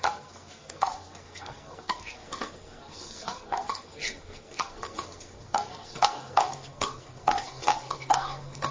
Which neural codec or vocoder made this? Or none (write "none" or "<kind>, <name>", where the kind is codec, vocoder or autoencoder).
codec, SNAC